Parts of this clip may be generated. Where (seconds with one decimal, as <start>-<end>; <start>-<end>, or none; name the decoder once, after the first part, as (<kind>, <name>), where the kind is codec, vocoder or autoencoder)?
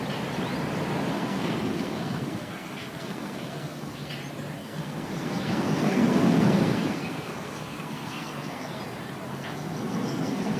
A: 1.1-4.1 (codec, SNAC); 4.6-8.8; 9.3-10.6